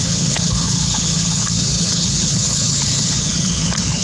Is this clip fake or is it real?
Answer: fake